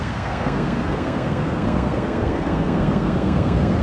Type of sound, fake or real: fake